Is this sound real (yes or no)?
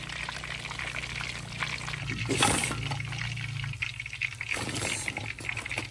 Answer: yes